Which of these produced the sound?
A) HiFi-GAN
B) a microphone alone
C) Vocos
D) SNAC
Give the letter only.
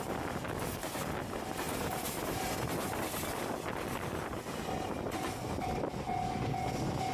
B